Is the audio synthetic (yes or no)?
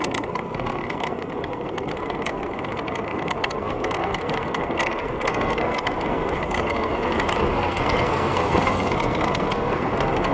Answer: yes